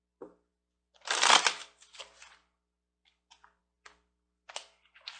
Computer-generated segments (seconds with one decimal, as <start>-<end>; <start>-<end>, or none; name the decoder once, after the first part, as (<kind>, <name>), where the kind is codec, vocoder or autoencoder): none